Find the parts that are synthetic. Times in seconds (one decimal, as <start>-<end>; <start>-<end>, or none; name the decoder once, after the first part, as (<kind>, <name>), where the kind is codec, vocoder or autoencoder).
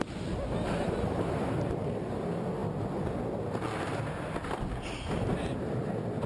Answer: none